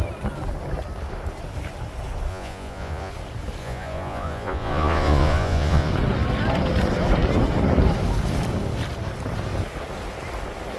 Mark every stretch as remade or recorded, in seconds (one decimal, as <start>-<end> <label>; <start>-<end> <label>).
0.0-2.3 recorded; 2.3-3.1 remade; 3.1-3.6 recorded; 3.6-5.9 remade; 5.9-10.8 recorded